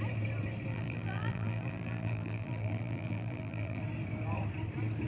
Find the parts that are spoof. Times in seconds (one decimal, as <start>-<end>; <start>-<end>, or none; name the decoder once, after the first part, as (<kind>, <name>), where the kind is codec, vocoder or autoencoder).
0.7-3.8 (vocoder, BigVGAN v2)